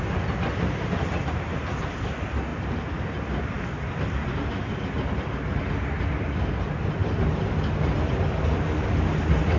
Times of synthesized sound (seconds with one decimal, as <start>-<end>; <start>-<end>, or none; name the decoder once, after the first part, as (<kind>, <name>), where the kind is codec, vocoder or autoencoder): 7.0-7.5 (vocoder, BigVGAN v2)